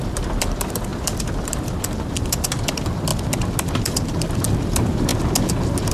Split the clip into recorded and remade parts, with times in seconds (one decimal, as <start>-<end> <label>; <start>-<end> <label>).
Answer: 0.0-3.1 remade; 3.1-3.7 recorded; 3.7-5.1 remade; 5.1-5.9 recorded